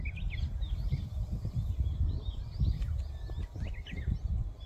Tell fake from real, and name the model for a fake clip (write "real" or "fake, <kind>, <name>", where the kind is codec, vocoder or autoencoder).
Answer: real